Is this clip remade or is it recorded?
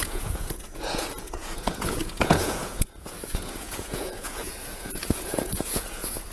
remade